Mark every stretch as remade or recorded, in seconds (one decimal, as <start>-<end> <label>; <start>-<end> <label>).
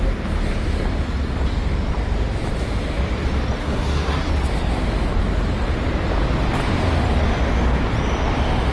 0.0-3.6 recorded; 3.6-4.3 remade; 4.3-8.7 recorded